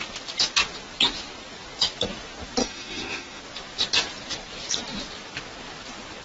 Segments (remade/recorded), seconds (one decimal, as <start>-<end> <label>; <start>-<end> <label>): 0.0-2.6 recorded; 2.6-3.4 remade; 3.4-6.2 recorded